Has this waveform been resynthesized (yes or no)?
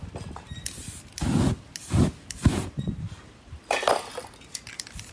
no